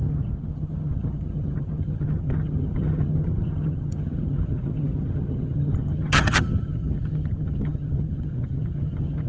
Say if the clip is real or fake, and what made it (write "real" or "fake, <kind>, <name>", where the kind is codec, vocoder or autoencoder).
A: fake, vocoder, HiFi-GAN